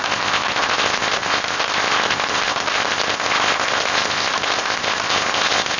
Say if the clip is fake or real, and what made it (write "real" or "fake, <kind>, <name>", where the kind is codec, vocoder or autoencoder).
fake, codec, ZipCodec